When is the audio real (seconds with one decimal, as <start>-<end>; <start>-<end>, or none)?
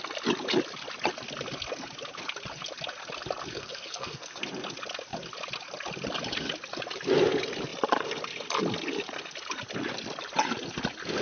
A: 0.0-3.5; 4.4-11.2